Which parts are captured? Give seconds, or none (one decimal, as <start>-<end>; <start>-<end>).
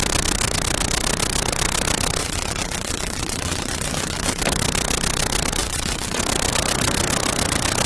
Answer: 0.0-2.2; 4.4-5.6; 6.2-7.9